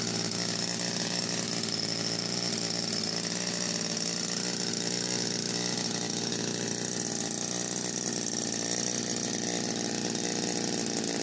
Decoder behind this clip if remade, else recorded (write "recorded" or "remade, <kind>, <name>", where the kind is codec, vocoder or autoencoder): recorded